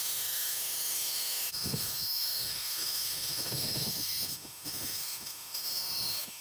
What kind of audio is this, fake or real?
fake